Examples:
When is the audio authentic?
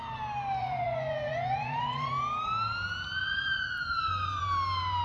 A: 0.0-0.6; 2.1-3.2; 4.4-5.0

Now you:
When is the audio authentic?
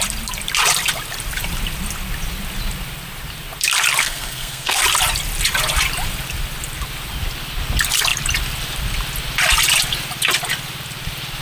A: 0.0-4.0; 4.8-11.4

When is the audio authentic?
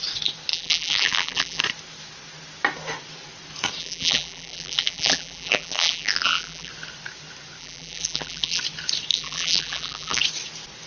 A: 0.0-0.5; 1.6-3.8; 6.7-7.6; 8.6-9.1; 10.2-10.9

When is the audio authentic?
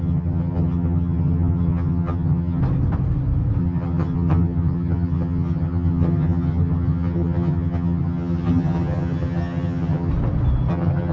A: 2.6-3.6; 10.1-10.7